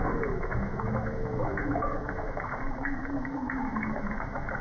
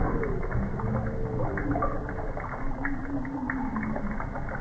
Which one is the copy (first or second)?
first